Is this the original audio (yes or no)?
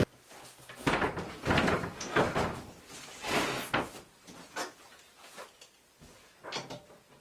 yes